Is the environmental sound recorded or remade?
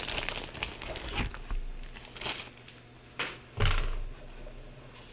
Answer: recorded